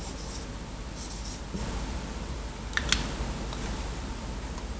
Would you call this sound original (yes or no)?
yes